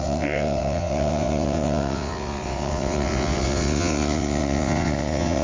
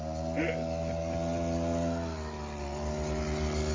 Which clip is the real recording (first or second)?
second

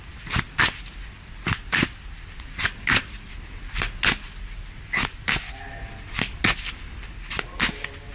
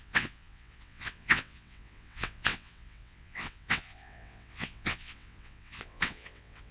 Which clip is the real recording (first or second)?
first